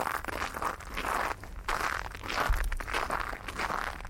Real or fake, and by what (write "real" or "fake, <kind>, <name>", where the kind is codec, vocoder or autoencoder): real